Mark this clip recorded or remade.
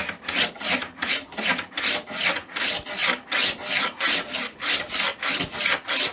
recorded